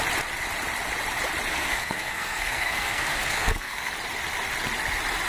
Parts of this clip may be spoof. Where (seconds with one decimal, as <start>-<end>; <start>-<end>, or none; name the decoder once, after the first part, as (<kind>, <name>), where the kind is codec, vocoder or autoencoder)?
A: 1.5-3.9 (codec, SNAC)